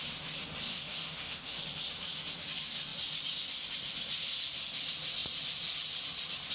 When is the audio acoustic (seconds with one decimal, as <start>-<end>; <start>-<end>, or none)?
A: 0.0-0.7; 1.6-6.5